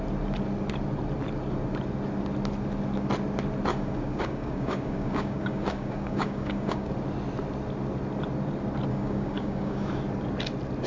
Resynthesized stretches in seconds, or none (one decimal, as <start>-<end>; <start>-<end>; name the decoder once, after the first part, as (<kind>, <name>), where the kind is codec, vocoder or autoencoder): 3.7-6.9 (codec, DAC); 8.9-9.9